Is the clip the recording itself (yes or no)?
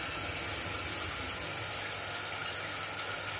yes